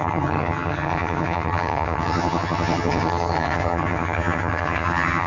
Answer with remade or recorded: remade